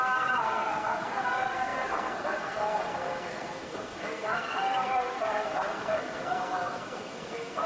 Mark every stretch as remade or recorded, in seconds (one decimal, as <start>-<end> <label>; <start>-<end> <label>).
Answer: 0.0-7.7 remade